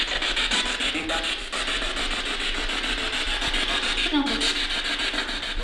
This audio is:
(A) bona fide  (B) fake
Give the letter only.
A